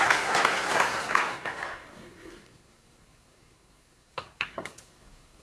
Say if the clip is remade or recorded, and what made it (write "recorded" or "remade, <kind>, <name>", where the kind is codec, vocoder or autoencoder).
remade, codec, SNAC